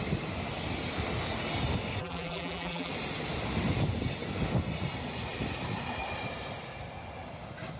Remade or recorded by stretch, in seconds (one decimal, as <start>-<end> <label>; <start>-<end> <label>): 0.0-2.0 recorded; 2.0-2.9 remade; 2.9-7.8 recorded